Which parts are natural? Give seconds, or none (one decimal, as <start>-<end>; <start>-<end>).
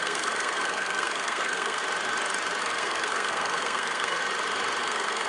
1.8-2.6; 4.2-4.8